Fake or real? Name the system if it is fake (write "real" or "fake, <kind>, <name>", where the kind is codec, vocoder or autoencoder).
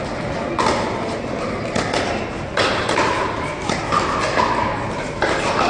real